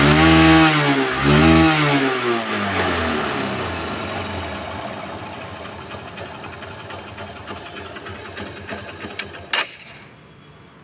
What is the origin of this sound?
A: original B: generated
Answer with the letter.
A